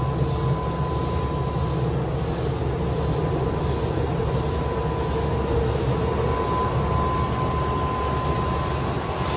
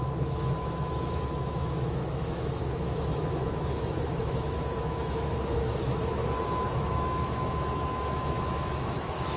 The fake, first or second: second